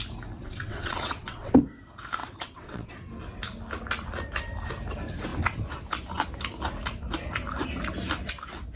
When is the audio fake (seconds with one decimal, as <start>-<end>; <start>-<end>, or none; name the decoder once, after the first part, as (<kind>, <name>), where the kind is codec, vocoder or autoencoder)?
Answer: 0.4-1.6 (vocoder, WaveNeXt); 2.2-2.9